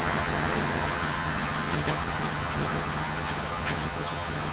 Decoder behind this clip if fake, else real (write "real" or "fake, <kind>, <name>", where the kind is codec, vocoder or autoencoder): fake, vocoder, HiFi-GAN